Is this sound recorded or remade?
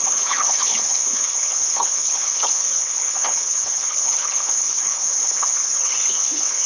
remade